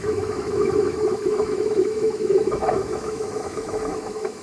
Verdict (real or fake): fake